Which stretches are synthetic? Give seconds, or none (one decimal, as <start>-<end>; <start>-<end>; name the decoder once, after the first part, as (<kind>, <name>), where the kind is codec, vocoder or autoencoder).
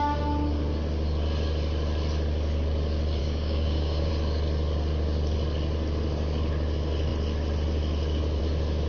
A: 3.2-4.1 (codec, DAC)